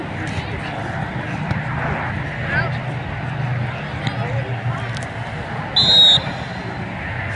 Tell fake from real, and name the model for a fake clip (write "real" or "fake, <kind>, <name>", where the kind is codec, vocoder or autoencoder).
real